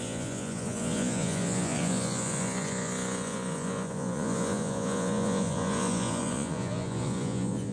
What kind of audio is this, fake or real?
fake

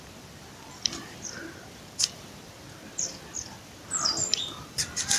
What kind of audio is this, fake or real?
fake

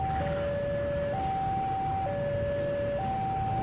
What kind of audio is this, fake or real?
real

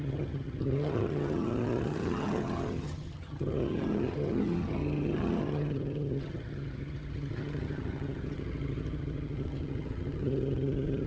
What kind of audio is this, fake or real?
fake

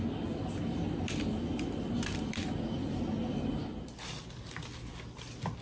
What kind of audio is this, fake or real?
real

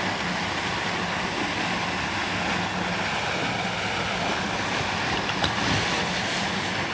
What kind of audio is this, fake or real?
real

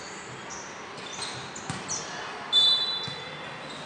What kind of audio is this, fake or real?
real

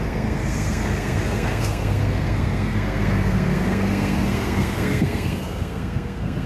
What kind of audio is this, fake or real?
fake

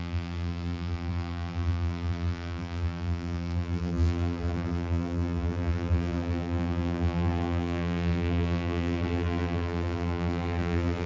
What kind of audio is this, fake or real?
fake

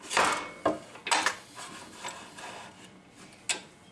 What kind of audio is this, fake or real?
real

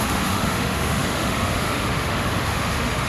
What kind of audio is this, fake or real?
fake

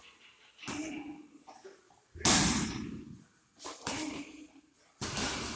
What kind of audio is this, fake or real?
real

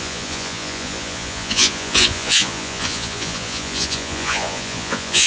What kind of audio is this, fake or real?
fake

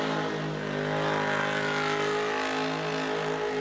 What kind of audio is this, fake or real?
real